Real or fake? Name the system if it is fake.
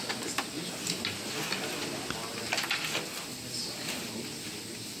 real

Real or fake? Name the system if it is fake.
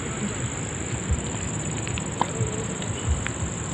real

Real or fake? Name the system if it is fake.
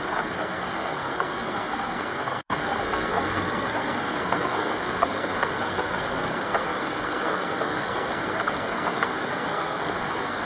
fake, codec, SNAC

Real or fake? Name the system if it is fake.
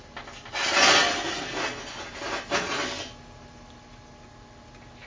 real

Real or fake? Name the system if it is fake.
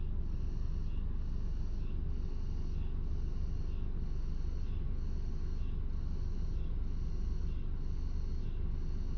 real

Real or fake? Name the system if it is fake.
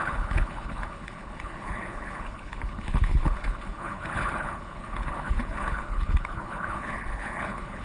fake, codec, HILCodec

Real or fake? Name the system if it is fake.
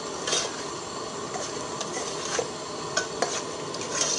real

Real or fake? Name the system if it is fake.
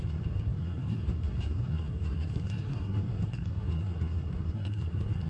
fake, codec, SNAC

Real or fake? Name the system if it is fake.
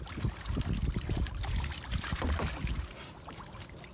real